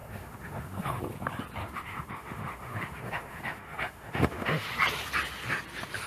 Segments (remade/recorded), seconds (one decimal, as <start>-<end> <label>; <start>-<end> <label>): 0.0-1.0 remade; 1.0-1.6 recorded; 1.6-4.7 remade; 4.7-6.1 recorded